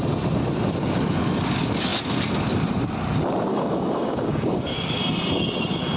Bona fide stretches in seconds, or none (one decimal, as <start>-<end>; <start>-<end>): 0.0-3.5; 5.0-6.0